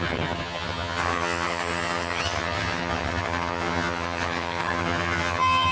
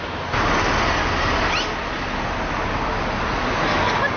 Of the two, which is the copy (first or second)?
first